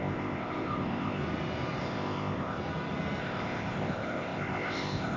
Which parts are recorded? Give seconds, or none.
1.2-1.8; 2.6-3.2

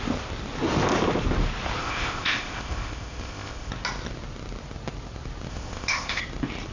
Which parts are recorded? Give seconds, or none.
0.0-1.8; 3.7-5.5; 6.2-6.7

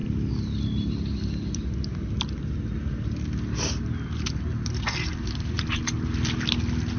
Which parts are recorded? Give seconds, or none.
0.0-7.0

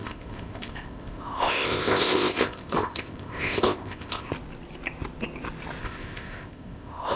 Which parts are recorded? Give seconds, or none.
4.3-5.8

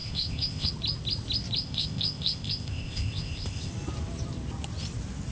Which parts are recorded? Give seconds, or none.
0.7-1.6; 3.7-5.3

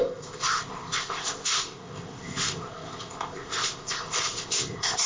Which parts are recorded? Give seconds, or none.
none